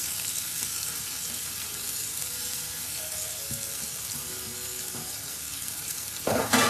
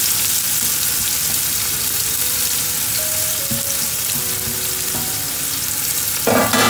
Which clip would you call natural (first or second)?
second